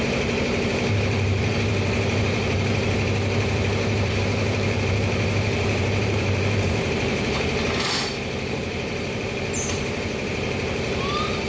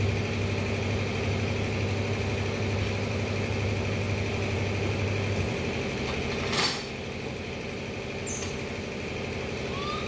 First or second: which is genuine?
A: second